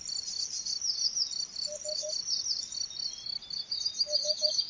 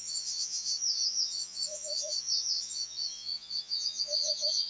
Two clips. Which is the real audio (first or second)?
first